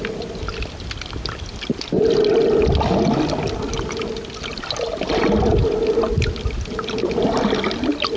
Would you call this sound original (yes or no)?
yes